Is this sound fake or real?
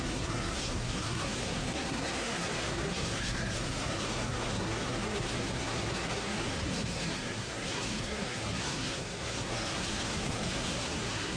fake